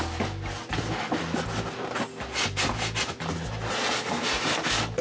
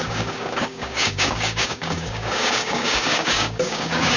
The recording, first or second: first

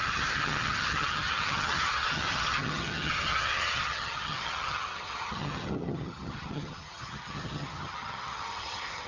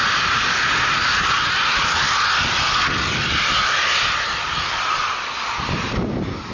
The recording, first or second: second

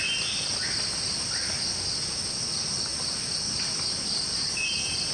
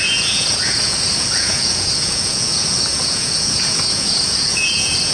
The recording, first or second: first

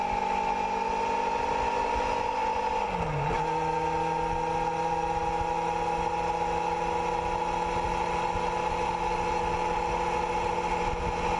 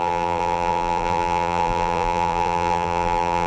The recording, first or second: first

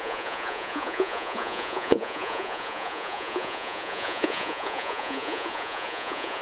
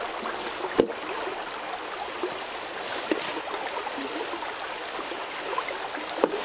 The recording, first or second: second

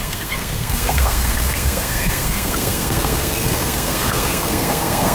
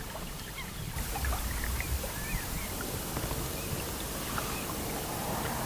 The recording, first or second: second